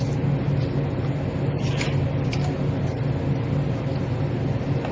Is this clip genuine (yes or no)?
yes